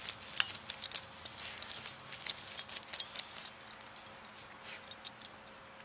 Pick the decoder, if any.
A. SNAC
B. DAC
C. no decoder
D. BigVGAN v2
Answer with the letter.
C